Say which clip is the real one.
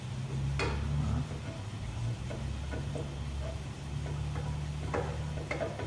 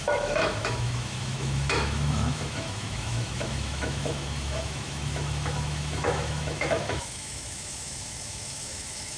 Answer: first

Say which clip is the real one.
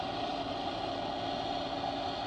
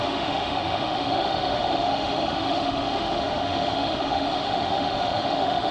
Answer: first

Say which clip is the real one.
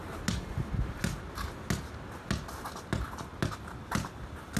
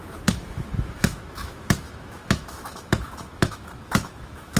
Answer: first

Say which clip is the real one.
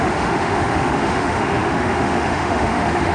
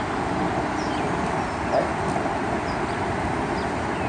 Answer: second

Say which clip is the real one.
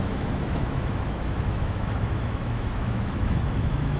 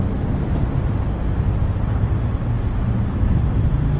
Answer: second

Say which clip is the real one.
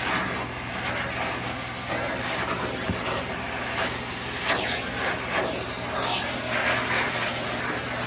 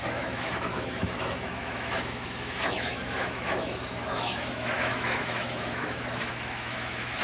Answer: first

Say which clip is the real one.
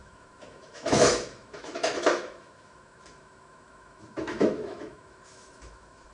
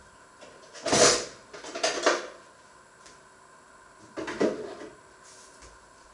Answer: second